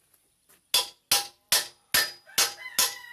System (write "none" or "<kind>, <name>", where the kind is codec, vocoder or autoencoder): none